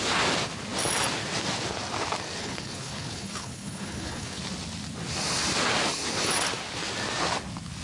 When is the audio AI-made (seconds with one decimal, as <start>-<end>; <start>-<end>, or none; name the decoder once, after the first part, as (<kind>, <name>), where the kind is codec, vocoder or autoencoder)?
2.4-4.4 (codec, HILCodec)